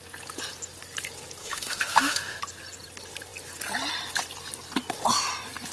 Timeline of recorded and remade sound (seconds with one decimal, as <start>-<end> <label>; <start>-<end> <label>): 0.0-1.4 recorded; 1.4-2.4 remade; 2.4-5.7 recorded

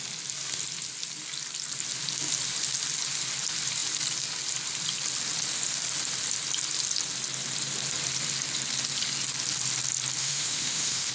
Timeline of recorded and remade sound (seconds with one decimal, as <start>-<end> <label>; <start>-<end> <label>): 0.0-10.2 recorded; 10.2-11.1 remade

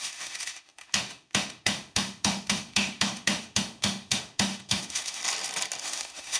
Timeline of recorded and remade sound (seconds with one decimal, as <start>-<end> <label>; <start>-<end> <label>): 0.0-5.2 remade; 5.2-5.8 recorded; 5.8-6.4 remade

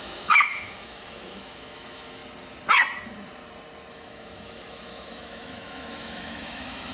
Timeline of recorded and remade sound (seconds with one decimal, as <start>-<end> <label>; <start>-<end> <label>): 0.0-2.2 remade; 2.2-3.9 recorded; 3.9-6.9 remade

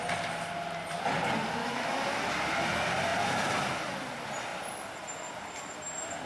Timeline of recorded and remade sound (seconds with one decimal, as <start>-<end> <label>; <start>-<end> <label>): 0.0-1.6 recorded; 1.6-2.3 remade; 2.3-6.3 recorded

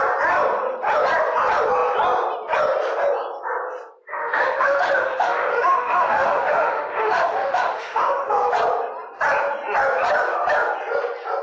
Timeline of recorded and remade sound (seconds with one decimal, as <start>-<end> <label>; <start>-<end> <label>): 0.0-4.1 recorded; 4.1-8.5 remade; 8.5-11.4 recorded